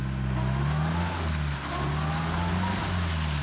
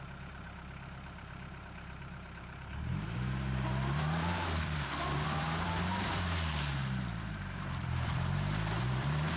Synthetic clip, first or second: second